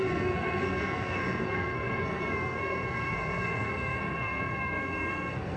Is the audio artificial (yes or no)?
yes